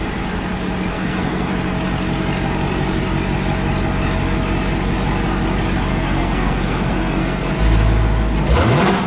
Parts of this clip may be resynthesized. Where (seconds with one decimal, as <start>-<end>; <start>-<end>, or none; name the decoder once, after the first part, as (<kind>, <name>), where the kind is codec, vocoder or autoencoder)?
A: 0.9-1.5 (codec, SNAC); 5.9-7.5